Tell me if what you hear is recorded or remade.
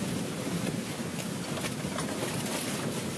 recorded